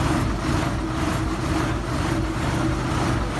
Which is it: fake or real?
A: real